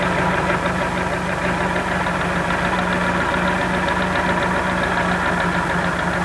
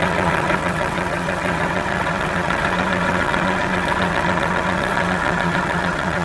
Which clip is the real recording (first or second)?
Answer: first